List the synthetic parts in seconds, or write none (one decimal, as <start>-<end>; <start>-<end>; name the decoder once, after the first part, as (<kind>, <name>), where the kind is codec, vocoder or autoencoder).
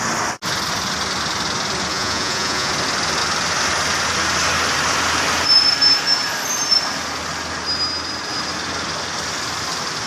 1.9-2.7 (vocoder, Vocos)